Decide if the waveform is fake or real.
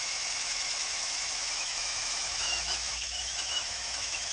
fake